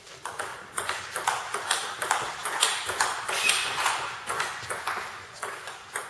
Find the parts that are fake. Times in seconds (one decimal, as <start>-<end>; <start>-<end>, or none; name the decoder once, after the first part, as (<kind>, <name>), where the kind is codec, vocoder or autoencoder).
0.5-1.0 (vocoder, Vocos); 2.4-6.1